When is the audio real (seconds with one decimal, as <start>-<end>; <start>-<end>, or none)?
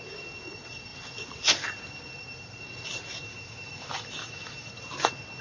0.0-3.3; 4.7-5.4